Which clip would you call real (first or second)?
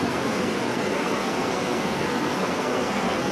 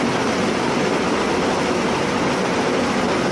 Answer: second